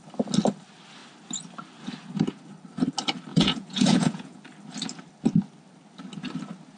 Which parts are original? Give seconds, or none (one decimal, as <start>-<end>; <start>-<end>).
0.0-3.3; 4.4-6.8